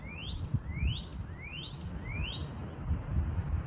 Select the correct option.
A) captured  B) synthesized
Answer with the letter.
A